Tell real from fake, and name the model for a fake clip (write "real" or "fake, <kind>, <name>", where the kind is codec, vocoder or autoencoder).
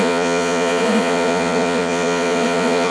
fake, vocoder, Vocos